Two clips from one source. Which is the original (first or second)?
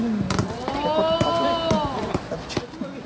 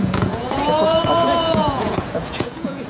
first